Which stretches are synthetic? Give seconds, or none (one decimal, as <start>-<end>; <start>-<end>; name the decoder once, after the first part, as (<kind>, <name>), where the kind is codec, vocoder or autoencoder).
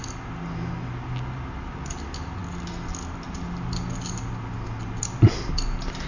none